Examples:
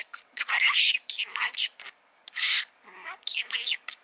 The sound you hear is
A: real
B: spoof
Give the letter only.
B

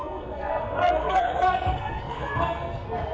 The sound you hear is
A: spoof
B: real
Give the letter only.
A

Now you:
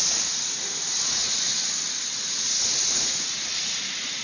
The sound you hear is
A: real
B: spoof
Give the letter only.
B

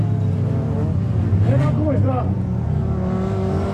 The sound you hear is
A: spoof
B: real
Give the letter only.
B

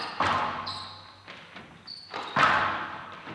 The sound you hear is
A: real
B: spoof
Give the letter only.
A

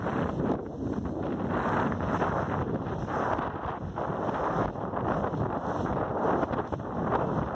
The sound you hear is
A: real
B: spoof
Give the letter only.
A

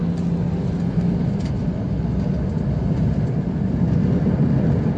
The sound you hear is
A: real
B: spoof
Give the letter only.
A